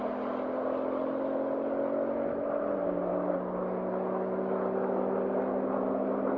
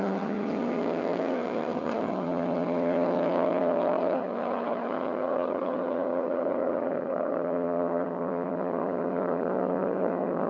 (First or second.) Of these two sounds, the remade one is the second